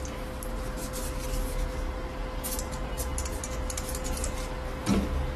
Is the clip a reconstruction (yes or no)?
no